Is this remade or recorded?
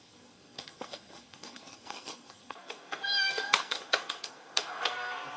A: remade